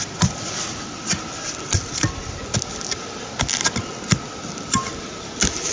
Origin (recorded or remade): recorded